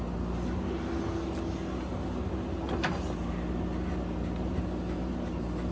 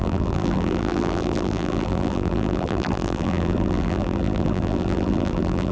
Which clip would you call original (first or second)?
first